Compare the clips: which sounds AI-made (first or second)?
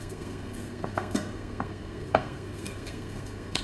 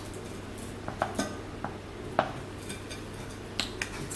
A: first